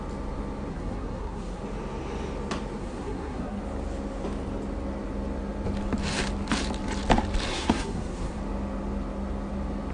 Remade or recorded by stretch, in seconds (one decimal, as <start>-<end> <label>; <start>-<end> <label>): 0.0-0.7 recorded; 0.7-1.6 remade; 1.6-2.8 recorded; 2.8-3.6 remade; 3.6-7.5 recorded; 7.5-8.4 remade; 8.4-9.9 recorded